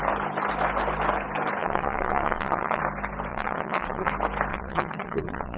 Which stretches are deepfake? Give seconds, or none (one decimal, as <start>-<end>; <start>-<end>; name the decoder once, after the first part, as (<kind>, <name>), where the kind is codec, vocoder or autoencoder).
1.6-2.8 (vocoder, WaveNeXt); 3.3-4.1; 4.5-5.6